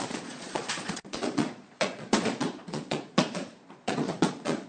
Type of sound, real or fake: fake